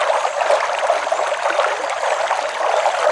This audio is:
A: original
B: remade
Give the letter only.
A